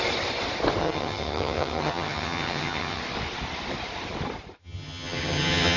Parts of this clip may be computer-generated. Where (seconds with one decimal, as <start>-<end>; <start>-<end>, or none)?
0.8-3.0; 4.6-5.8